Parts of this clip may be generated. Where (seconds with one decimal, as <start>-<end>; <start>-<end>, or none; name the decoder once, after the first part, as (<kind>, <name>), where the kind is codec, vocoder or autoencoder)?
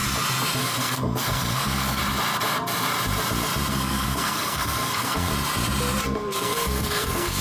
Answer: 0.6-2.0 (codec, SNAC); 3.7-5.3; 6.0-7.4